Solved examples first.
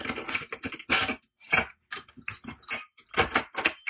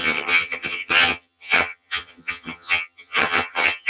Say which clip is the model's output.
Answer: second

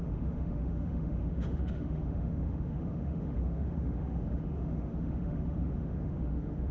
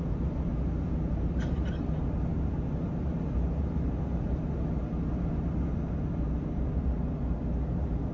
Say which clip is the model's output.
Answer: first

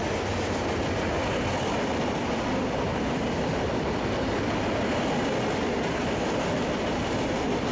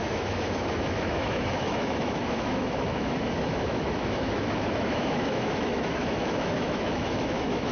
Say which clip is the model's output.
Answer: second